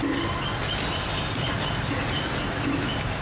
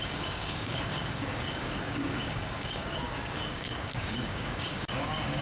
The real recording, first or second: first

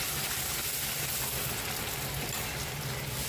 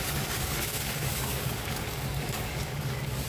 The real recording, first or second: first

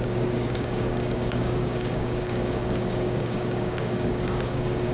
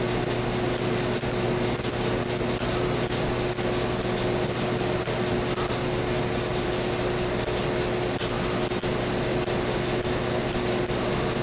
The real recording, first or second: second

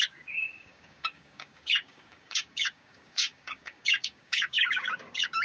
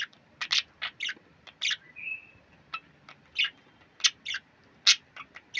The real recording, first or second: second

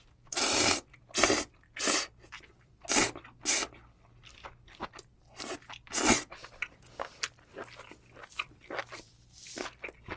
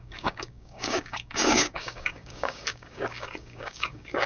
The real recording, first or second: first